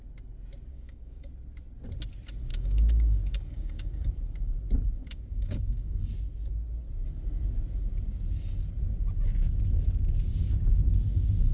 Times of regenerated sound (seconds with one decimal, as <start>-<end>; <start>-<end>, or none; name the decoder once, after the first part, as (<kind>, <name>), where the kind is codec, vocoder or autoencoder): 0.7-1.3 (codec, DAC); 2.5-4.1; 5.0-6.1